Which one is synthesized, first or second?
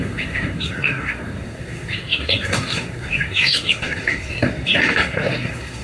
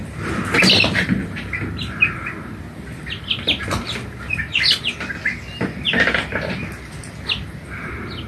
first